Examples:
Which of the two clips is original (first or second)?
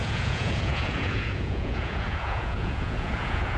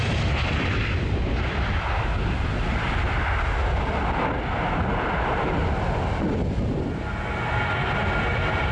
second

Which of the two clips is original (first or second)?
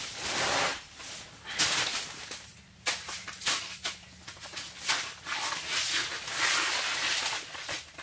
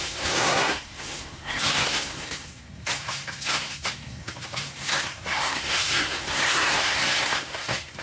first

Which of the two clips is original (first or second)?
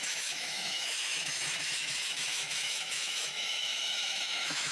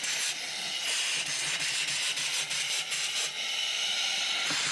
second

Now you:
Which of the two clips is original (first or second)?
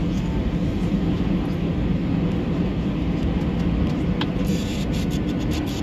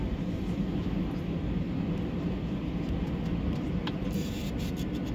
first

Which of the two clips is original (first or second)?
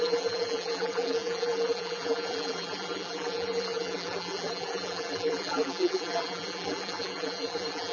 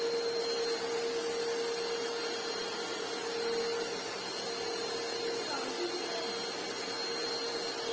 second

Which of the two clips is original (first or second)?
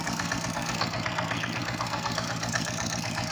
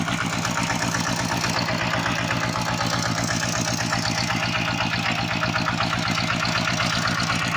second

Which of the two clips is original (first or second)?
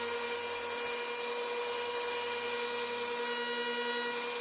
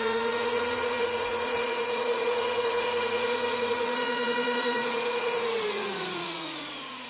first